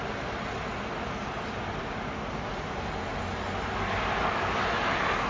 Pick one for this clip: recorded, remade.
recorded